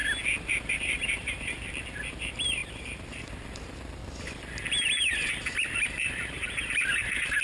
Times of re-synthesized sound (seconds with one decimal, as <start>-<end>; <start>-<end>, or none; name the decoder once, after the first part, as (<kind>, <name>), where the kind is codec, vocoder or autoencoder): 0.7-4.0 (vocoder, BigVGAN v2); 5.1-7.4